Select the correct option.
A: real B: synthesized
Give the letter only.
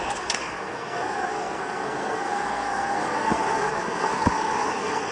B